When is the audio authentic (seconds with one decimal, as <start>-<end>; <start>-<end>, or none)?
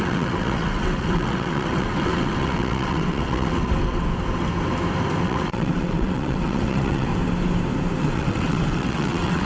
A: 4.1-5.2; 7.1-8.0